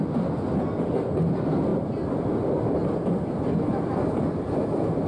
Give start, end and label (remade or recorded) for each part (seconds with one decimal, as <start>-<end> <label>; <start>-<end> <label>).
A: 0.0-5.1 recorded